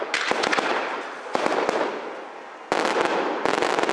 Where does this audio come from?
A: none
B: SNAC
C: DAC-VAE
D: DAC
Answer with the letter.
A